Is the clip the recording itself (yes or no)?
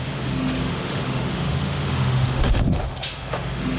no